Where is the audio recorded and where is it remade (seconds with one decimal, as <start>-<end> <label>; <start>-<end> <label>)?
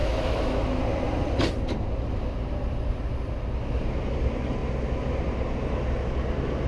0.0-0.8 remade; 0.8-6.7 recorded